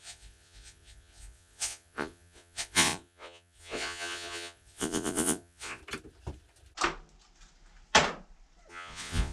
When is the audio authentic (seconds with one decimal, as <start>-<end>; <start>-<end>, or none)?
5.8-8.7